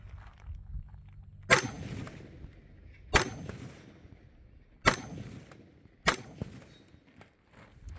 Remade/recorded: recorded